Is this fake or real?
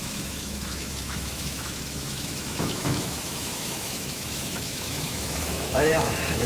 fake